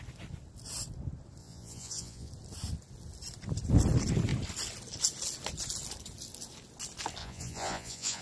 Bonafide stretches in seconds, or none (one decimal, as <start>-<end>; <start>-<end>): 0.0-1.4; 2.3-7.2